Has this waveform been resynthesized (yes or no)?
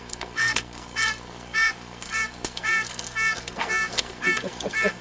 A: yes